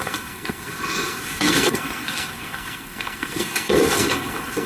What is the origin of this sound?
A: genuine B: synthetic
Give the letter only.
B